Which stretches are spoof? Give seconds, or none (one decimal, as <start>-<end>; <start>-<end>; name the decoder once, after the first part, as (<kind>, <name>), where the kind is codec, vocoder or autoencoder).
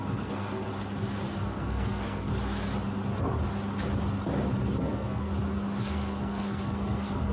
0.0-0.7 (codec, SNAC); 1.4-2.3; 4.8-5.3; 5.8-7.3